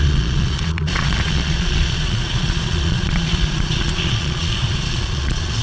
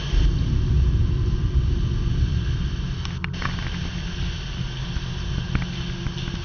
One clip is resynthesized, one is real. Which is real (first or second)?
second